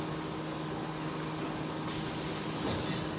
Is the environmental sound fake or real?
real